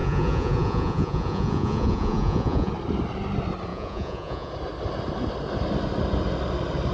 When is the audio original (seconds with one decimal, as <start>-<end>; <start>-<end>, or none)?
2.7-3.7; 4.5-6.9

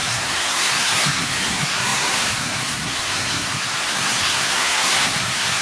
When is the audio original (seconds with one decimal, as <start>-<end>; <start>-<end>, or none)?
none

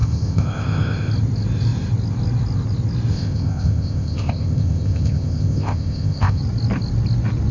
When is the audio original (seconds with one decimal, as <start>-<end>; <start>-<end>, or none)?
1.1-3.1; 6.4-7.5

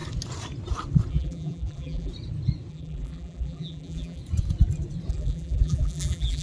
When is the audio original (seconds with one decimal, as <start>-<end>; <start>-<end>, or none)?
0.0-1.1; 2.1-2.7; 4.2-5.1

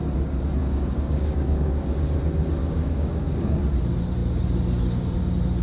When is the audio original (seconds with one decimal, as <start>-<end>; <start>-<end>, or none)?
0.0-0.6; 1.9-2.6; 3.6-5.6

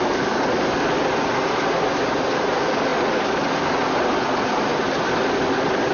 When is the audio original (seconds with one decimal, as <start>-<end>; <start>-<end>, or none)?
0.0-5.9

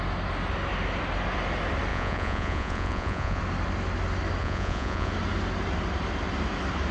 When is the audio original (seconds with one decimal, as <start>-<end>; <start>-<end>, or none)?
0.0-1.9; 3.4-4.4; 5.1-6.9